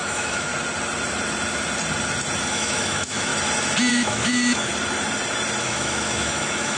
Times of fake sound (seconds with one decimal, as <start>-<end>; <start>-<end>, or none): 0.0-0.5; 2.5-3.3; 3.9-4.7; 5.6-6.8